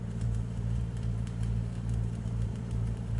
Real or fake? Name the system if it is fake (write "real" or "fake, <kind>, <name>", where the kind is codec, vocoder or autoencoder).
fake, vocoder, BigVGAN v2